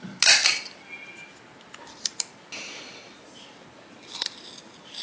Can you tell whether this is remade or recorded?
recorded